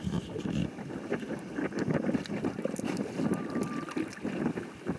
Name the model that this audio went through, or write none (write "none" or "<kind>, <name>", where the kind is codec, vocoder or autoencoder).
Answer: none